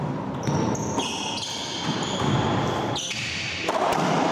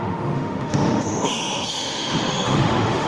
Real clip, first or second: first